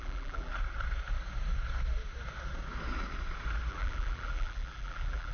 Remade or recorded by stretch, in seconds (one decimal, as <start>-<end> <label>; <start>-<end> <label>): 0.0-0.5 remade; 0.5-3.7 recorded; 3.7-5.3 remade